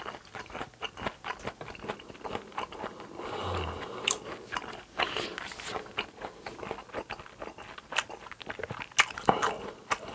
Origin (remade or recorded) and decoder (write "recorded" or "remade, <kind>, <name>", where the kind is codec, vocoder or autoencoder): recorded